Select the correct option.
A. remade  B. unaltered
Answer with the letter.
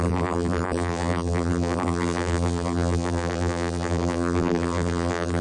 A